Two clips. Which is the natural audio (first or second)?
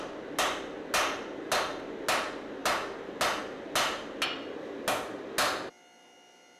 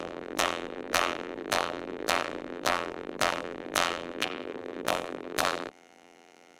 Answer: first